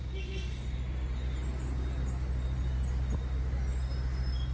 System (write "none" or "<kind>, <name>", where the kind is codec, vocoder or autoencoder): none